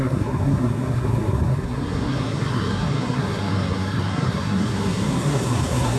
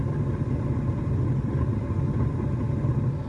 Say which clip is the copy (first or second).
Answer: first